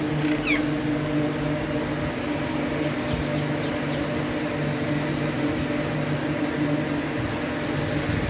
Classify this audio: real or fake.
real